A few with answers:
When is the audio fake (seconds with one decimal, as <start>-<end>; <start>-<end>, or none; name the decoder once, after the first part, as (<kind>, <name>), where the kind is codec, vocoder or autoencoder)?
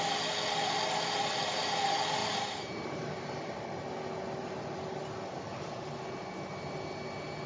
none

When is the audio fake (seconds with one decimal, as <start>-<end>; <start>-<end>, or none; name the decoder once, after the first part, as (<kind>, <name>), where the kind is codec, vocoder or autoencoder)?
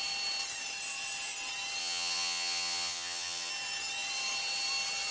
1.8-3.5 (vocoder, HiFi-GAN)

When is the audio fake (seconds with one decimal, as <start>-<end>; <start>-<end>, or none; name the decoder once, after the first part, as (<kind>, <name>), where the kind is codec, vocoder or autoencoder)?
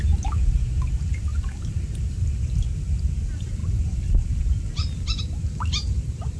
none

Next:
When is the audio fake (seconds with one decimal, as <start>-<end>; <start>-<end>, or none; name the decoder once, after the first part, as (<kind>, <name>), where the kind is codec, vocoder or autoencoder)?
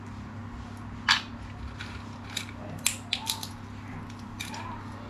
none